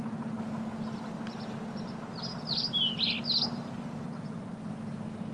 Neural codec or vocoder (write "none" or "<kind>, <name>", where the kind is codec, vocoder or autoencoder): none